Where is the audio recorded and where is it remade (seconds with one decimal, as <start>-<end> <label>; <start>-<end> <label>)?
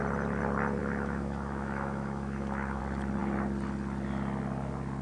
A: 0.0-0.8 recorded; 0.8-2.8 remade; 2.8-5.0 recorded